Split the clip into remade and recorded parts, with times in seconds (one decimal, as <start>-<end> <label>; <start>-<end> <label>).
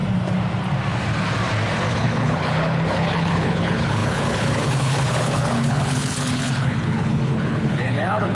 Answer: 0.0-1.9 recorded; 1.9-8.3 remade